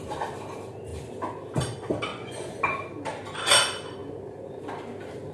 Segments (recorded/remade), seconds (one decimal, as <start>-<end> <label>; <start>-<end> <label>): 0.0-2.1 recorded; 2.1-2.6 remade; 2.6-5.3 recorded